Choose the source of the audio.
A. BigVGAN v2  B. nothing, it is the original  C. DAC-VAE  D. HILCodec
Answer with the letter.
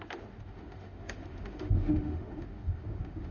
C